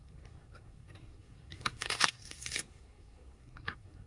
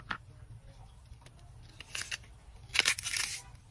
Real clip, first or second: second